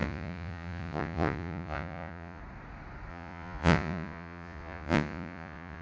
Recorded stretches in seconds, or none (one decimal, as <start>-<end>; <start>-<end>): 2.4-3.1